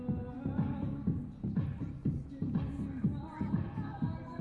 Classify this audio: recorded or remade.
recorded